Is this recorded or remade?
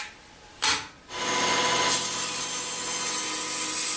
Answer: recorded